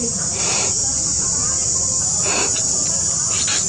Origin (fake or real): real